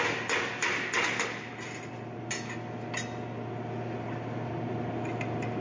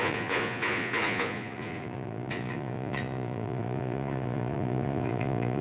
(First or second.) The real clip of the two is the first